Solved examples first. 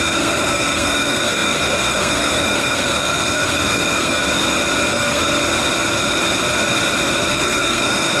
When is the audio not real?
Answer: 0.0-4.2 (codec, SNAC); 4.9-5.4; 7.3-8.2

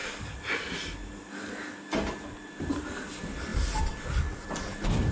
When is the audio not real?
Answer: none

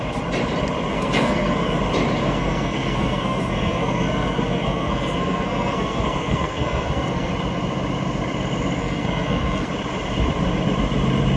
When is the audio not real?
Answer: 0.9-1.8 (codec, SNAC); 2.2-7.3; 8.8-9.7

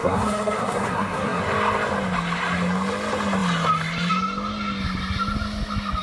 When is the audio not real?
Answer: 0.0-1.4 (codec, SNAC)

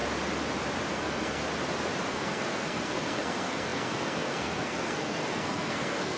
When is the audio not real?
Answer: 0.9-1.4 (codec, SNAC); 2.1-6.2

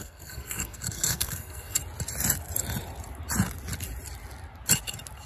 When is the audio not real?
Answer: 0.0-1.8 (codec, SNAC)